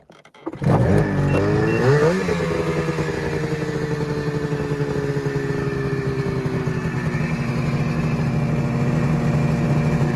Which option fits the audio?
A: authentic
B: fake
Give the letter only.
A